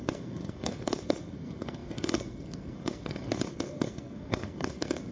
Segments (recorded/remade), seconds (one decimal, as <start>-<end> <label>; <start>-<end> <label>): 0.0-5.1 remade